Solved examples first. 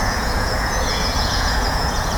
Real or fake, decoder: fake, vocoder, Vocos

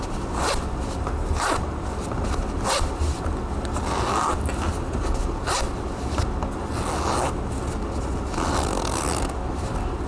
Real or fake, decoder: real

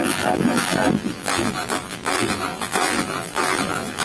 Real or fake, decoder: fake, vocoder, BigVGAN v2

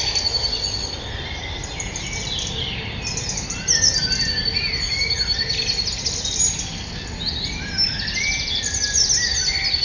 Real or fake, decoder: real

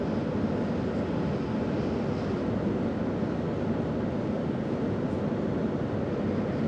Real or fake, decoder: real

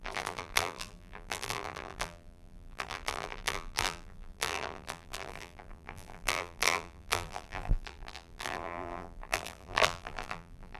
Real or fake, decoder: fake, vocoder, BigVGAN v2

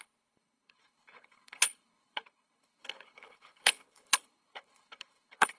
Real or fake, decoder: fake, codec, HILCodec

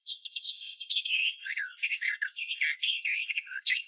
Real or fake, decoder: fake, codec, SNAC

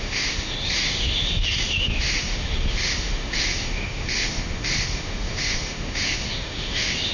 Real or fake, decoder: fake, autoencoder, DAC-VAE